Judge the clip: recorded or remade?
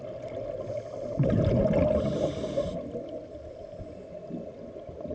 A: recorded